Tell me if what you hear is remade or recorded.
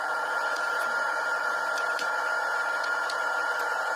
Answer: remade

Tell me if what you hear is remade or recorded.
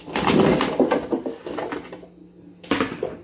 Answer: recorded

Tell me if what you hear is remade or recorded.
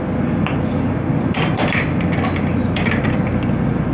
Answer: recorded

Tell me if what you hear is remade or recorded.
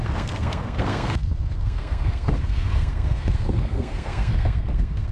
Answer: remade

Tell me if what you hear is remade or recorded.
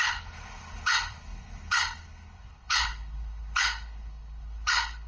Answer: remade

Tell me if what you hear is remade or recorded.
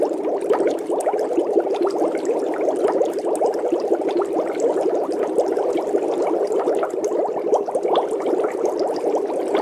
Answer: recorded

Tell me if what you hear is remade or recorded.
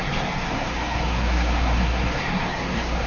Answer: remade